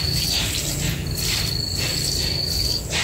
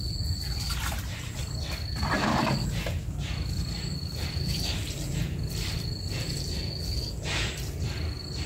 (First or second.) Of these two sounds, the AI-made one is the second